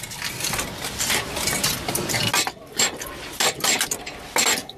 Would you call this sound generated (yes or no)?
no